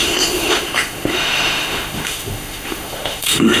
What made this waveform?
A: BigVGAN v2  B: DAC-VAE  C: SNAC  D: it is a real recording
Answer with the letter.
B